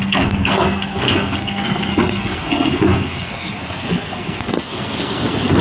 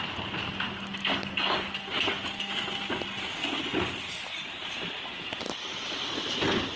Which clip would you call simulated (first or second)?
first